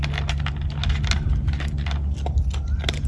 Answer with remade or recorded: recorded